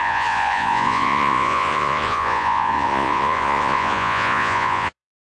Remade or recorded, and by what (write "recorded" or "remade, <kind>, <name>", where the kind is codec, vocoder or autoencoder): remade, vocoder, Vocos